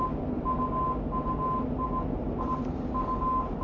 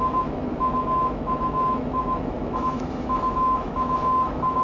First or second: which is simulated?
second